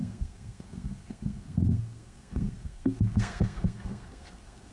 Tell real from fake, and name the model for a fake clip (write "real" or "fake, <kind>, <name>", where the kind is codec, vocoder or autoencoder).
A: fake, codec, SNAC